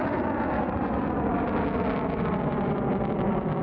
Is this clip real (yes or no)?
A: yes